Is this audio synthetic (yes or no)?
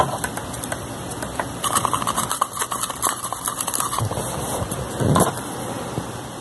yes